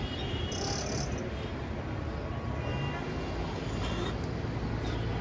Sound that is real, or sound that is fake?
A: real